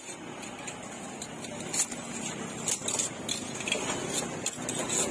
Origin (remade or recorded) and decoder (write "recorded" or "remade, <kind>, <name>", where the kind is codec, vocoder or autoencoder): recorded